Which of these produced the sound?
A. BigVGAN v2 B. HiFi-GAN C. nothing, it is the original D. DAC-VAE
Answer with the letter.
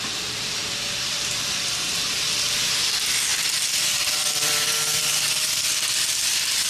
A